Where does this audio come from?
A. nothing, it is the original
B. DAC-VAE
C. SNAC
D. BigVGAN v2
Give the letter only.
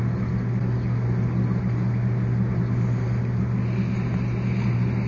A